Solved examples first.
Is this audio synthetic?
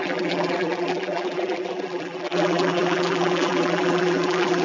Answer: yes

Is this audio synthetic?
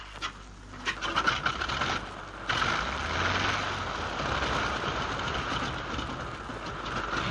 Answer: no